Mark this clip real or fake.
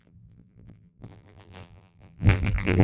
fake